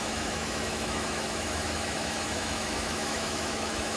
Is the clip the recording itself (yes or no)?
no